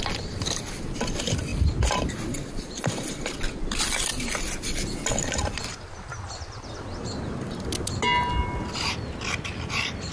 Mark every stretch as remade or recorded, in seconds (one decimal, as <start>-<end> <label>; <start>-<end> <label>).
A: 0.0-10.1 recorded